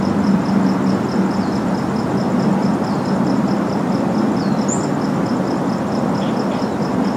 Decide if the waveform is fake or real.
real